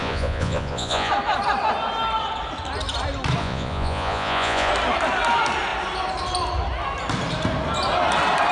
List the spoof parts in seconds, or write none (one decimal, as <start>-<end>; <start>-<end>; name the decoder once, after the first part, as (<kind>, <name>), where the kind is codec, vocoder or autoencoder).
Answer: 0.0-1.1 (vocoder, Vocos); 3.4-4.7